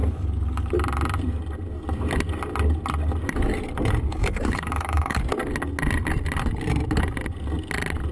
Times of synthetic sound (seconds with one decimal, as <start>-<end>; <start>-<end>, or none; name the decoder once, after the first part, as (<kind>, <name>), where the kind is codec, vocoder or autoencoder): 0.0-0.7 (codec, DAC); 4.1-5.2